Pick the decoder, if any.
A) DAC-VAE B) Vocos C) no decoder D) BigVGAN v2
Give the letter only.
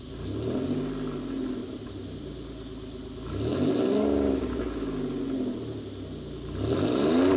C